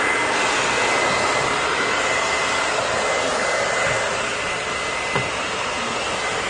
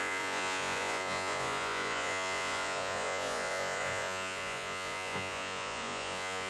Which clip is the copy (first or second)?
second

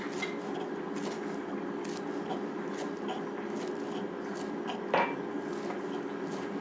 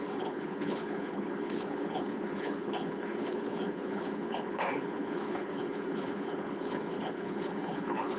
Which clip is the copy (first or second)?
second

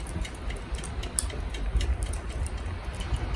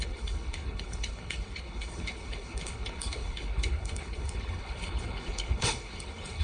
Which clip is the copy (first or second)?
second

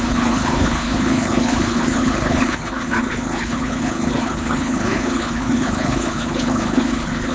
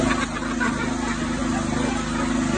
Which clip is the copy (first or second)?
first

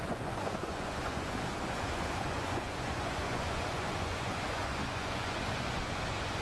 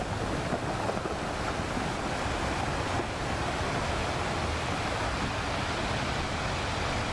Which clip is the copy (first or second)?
first